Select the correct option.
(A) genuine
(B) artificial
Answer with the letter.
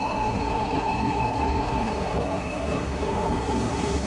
B